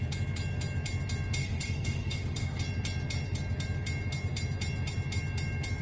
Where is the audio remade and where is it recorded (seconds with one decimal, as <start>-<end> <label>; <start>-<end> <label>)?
0.0-1.4 recorded; 1.4-2.6 remade; 2.6-5.8 recorded